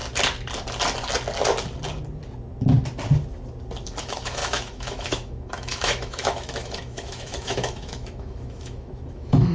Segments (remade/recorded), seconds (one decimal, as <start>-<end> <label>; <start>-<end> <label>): 0.0-4.0 recorded; 4.0-9.5 remade